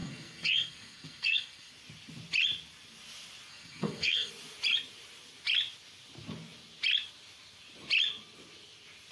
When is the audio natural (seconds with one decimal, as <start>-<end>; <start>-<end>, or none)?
1.7-3.5; 4.3-9.1

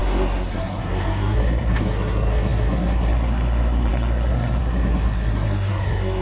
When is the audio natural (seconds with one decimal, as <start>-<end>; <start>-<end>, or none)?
none